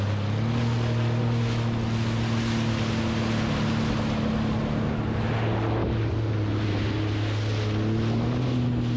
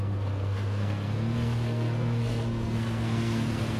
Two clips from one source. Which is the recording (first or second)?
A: first